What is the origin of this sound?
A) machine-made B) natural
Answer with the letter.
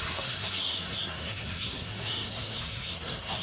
A